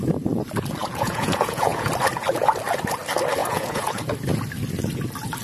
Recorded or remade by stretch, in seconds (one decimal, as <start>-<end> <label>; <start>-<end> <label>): 0.0-0.8 recorded; 0.8-1.9 remade; 1.9-3.4 recorded; 3.4-4.0 remade; 4.0-5.4 recorded